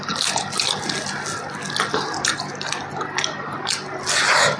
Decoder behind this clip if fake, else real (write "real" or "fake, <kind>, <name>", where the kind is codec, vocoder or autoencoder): real